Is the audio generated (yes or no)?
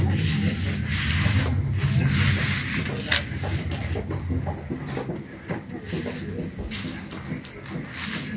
no